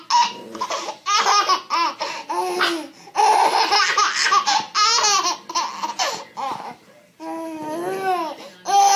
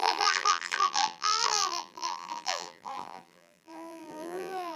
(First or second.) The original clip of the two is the first